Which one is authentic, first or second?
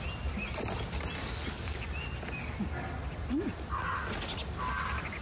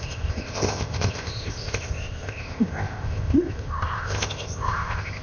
first